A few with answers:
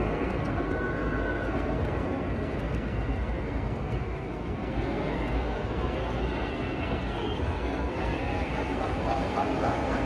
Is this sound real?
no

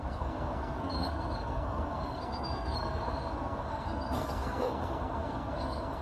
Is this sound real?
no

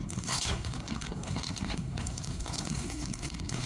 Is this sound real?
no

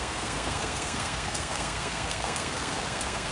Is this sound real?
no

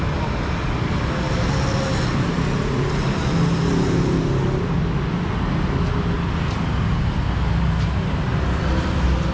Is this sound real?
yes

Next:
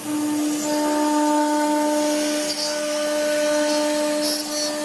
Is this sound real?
yes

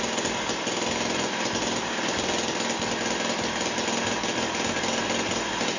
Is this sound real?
yes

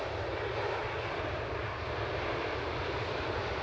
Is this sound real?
yes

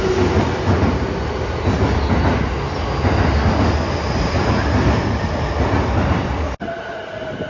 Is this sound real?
yes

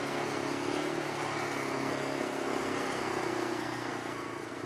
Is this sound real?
no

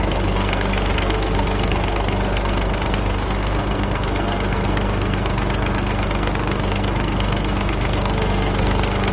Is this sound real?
no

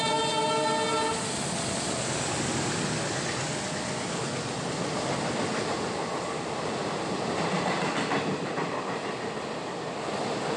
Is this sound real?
yes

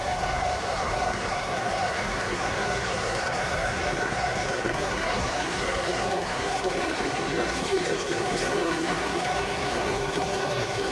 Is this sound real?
no